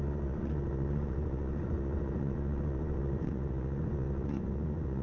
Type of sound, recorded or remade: remade